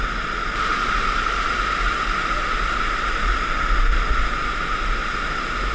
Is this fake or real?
real